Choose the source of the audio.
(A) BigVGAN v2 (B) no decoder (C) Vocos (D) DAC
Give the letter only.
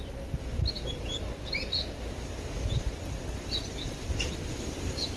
B